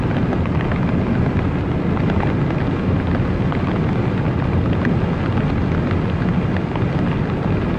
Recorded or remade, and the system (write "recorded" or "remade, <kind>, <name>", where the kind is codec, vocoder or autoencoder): recorded